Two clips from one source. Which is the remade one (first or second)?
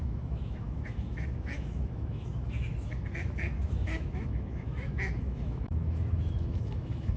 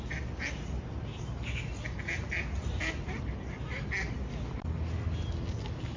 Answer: first